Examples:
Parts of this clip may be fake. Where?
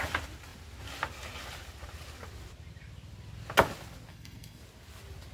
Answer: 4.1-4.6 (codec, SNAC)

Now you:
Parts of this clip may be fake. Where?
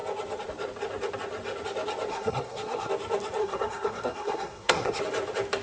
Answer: 2.1-2.9 (codec, SNAC); 3.4-5.0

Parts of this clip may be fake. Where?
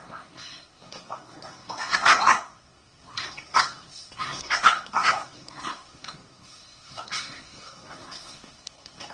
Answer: 0.0-9.1 (codec, SNAC)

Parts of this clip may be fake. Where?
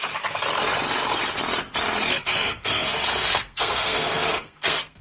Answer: 2.1-5.0 (codec, SNAC)